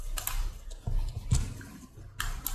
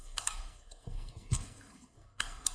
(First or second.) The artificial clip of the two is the second